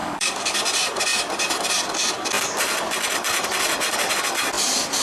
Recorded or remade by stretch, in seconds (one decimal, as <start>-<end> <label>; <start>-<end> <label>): 0.0-0.6 remade; 0.6-5.0 recorded